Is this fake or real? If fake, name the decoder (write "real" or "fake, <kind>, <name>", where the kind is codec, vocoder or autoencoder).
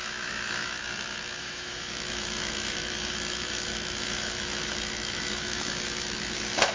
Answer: fake, autoencoder, DAC-VAE